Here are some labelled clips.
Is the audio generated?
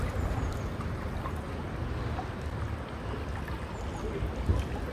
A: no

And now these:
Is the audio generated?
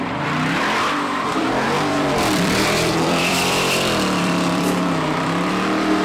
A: yes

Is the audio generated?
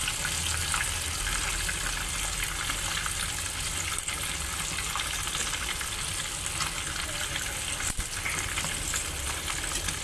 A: no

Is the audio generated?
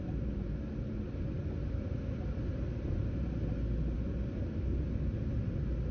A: no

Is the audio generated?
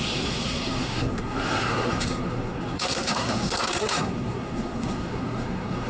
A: yes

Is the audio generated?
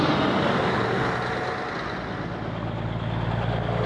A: no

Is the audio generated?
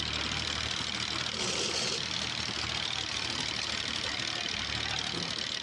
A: no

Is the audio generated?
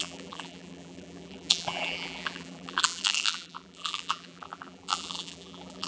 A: yes